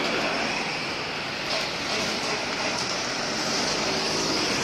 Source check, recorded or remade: recorded